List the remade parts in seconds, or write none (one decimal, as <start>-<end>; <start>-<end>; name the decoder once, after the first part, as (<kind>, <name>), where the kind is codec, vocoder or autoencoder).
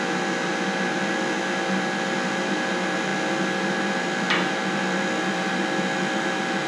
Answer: none